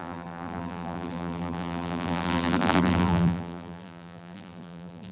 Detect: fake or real fake